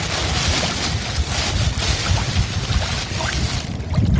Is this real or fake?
real